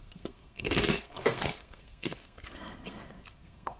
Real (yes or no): no